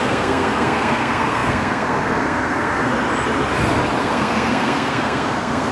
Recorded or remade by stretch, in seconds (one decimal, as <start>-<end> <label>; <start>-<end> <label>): 0.0-2.9 remade; 2.9-4.0 recorded; 4.0-5.7 remade